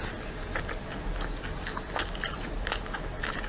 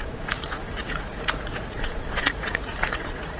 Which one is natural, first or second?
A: first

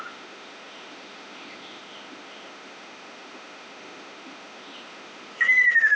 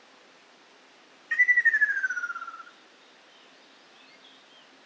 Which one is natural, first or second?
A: second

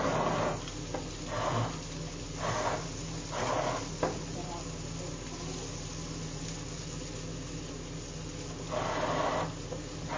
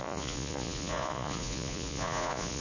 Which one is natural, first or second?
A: first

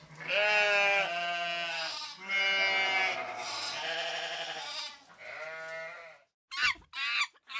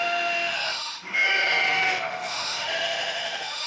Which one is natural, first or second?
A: first